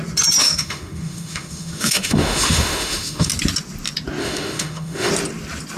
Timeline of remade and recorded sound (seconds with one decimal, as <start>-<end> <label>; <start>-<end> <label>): 0.0-0.4 recorded; 0.4-3.3 remade; 3.3-4.2 recorded; 4.2-5.1 remade; 5.1-5.8 recorded